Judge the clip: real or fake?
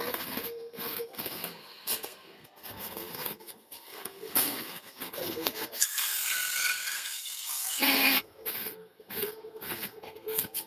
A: fake